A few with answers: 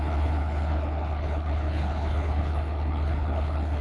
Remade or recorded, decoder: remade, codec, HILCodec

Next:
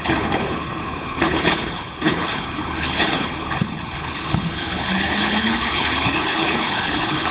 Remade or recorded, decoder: remade, codec, HILCodec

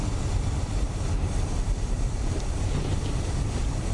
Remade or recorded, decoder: recorded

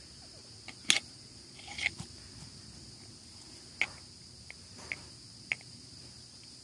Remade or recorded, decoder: recorded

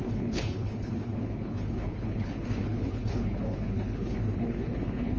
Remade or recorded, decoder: remade, codec, HILCodec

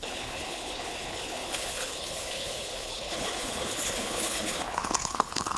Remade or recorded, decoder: remade, codec, HILCodec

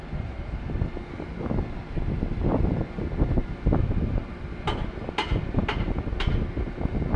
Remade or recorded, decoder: recorded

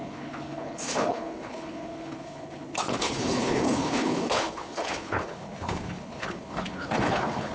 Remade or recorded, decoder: remade, codec, HILCodec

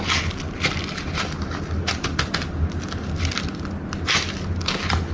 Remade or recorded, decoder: recorded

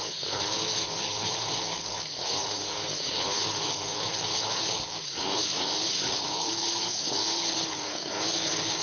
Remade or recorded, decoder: remade, codec, HILCodec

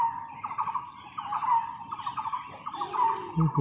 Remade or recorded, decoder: recorded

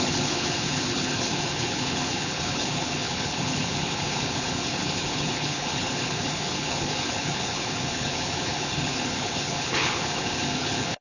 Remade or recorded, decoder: remade, codec, HILCodec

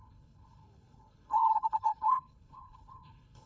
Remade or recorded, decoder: remade, codec, HILCodec